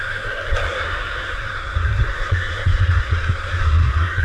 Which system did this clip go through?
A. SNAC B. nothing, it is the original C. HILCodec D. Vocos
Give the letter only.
A